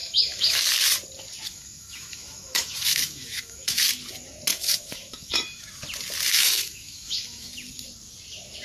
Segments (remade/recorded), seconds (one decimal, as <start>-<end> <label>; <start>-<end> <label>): 0.0-0.6 remade; 0.6-1.5 recorded; 1.5-3.8 remade; 3.8-4.5 recorded; 4.5-5.7 remade; 5.7-6.3 recorded; 6.3-7.5 remade; 7.5-8.6 recorded